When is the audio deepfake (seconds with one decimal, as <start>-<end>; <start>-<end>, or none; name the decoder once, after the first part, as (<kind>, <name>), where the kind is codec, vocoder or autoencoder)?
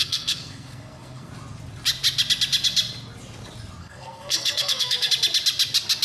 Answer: 0.0-1.3 (codec, SNAC); 3.8-5.1